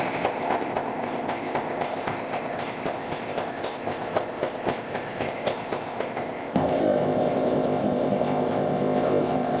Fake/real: fake